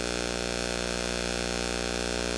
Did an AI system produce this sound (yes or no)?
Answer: no